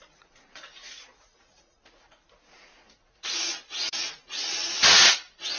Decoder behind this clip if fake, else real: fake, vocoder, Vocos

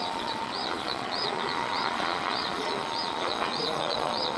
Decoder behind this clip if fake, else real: fake, vocoder, Vocos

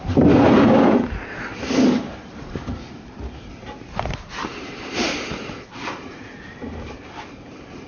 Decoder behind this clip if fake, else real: real